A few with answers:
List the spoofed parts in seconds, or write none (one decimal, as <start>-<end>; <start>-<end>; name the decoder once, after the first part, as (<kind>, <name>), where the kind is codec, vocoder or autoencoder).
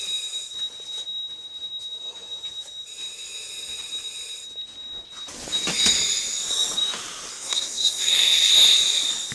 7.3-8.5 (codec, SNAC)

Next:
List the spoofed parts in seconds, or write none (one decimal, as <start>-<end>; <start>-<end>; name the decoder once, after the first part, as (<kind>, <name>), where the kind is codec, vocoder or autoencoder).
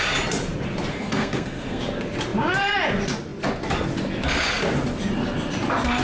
0.9-1.8 (codec, SNAC)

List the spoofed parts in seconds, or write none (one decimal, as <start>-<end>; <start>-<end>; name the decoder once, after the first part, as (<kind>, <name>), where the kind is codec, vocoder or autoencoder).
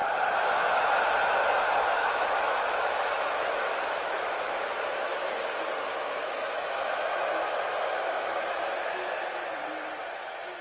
1.4-5.4 (autoencoder, DAC-VAE); 5.9-8.7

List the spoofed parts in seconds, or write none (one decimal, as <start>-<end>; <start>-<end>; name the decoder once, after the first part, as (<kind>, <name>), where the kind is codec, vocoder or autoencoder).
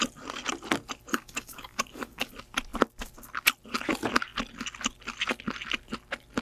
1.1-2.3 (codec, DAC)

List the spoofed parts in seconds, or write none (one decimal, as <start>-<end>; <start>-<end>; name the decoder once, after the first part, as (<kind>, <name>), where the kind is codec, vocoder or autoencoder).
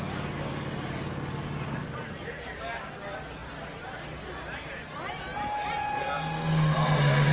none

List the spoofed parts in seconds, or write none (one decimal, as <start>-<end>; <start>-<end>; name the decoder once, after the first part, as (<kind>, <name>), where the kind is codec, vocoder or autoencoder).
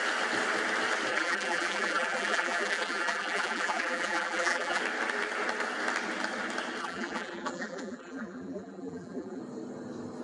1.1-4.8 (vocoder, BigVGAN v2); 6.8-9.4